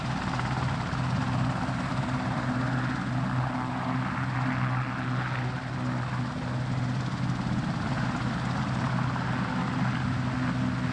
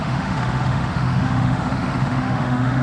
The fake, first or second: second